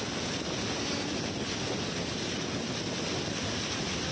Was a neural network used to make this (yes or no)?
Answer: no